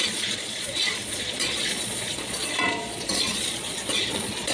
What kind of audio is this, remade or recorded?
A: remade